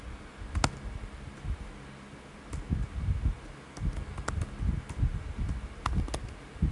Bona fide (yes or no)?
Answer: yes